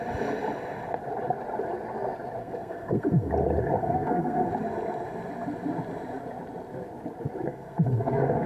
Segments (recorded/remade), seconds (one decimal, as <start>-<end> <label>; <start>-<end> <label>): 0.0-2.4 recorded; 2.4-3.3 remade; 3.3-3.8 recorded; 3.8-4.5 remade; 4.5-7.5 recorded; 7.5-8.5 remade